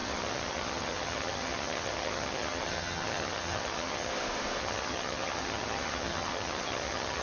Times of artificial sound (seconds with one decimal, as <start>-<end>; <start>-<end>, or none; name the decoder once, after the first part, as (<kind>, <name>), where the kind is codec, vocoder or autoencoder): 0.0-4.1 (vocoder, HiFi-GAN); 4.6-7.2